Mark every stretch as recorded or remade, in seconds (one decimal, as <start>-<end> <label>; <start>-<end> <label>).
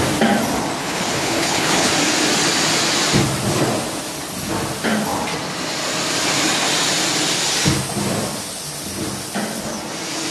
0.0-0.8 recorded; 0.8-1.9 remade; 1.9-10.3 recorded